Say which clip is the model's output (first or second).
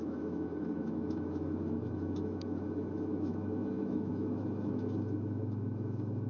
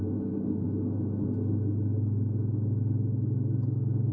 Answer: first